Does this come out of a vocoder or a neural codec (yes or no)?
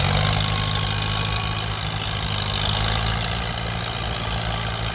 no